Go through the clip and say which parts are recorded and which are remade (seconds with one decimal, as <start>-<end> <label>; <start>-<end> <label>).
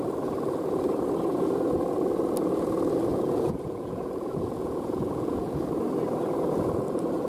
0.0-3.1 recorded; 3.1-5.5 remade; 5.5-7.3 recorded